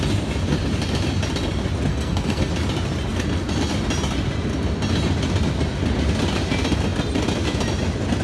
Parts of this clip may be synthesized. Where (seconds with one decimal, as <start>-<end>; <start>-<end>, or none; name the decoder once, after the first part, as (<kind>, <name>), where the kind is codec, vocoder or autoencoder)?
1.9-2.5 (codec, SNAC)